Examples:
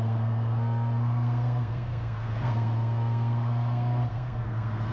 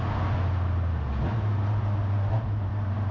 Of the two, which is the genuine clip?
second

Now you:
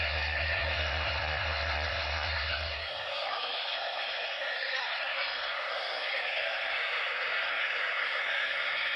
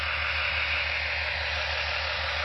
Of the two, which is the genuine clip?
second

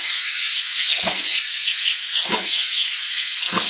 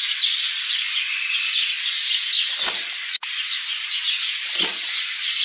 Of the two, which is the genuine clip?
second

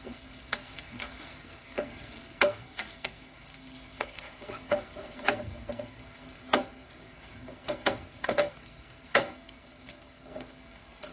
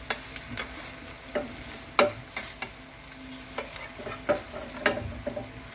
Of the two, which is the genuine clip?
second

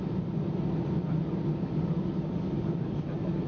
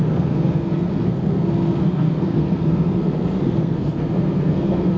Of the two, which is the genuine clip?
first